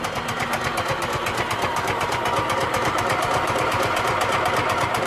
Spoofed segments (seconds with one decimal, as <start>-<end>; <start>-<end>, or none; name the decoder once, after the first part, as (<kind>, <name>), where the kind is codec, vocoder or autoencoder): 1.7-5.1 (vocoder, BigVGAN v2)